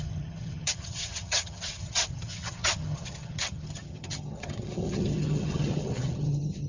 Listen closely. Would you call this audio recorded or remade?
remade